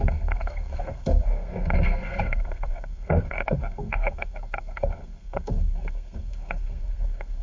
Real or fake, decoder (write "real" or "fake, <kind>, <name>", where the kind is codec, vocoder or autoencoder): fake, codec, SNAC